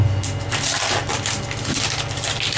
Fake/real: real